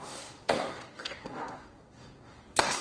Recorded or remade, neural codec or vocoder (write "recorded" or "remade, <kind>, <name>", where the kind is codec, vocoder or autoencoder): remade, codec, SNAC